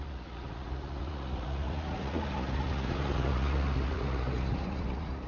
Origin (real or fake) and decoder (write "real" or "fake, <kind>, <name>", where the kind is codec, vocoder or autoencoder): fake, vocoder, Vocos